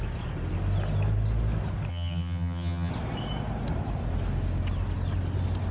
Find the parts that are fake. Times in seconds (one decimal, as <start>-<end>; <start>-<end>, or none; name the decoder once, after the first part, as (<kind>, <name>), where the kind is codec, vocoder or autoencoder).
1.9-2.9 (vocoder, HiFi-GAN)